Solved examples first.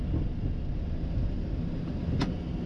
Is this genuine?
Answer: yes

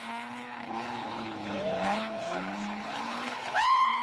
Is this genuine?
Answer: no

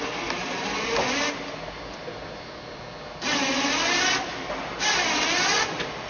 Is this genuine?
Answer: yes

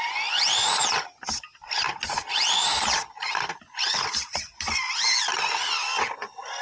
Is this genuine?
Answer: yes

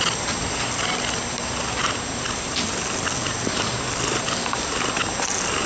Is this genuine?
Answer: yes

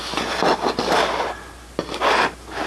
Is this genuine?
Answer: yes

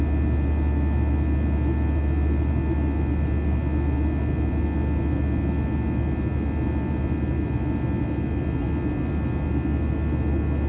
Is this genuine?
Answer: yes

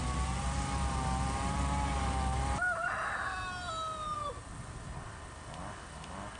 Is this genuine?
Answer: yes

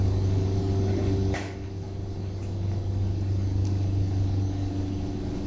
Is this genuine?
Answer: no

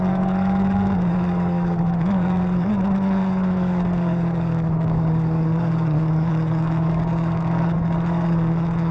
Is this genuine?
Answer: no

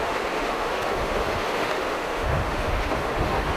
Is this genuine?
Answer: no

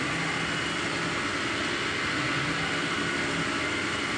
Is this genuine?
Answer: yes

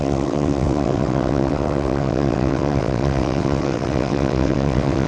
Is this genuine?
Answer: no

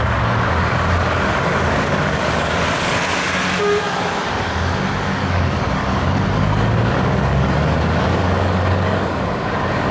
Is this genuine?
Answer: no